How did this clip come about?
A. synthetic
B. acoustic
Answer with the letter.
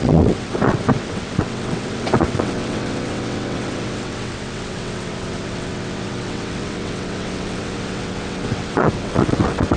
A